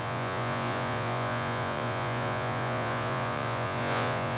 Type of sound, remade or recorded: remade